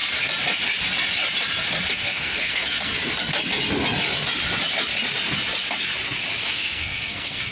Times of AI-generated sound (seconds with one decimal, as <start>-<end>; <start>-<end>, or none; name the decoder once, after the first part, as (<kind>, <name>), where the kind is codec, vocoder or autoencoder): 1.9-2.9 (codec, SNAC); 6.4-7.5